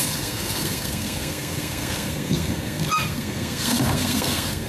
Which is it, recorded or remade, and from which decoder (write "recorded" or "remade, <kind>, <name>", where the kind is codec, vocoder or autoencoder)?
remade, codec, SNAC